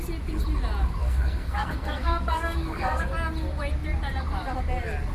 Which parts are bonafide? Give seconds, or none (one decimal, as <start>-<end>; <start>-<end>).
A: 0.0-1.0; 3.1-5.1